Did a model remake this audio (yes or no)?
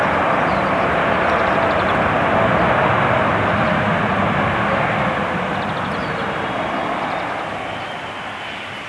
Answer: no